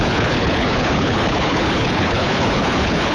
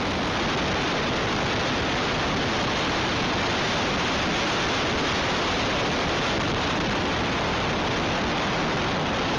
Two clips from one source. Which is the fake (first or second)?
first